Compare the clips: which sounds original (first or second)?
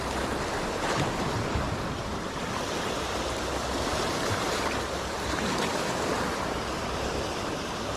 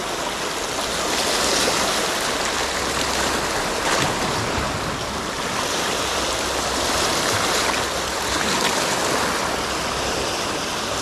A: second